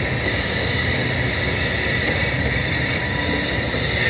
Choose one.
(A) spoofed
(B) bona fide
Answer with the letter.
B